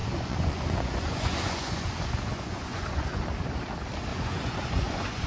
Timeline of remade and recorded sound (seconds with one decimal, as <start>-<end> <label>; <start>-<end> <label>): 0.0-3.2 remade; 3.2-4.1 recorded; 4.1-5.3 remade